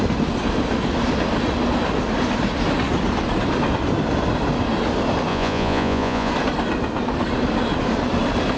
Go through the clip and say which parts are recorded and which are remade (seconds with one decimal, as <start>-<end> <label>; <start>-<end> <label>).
0.0-5.3 recorded; 5.3-6.3 remade; 6.3-8.6 recorded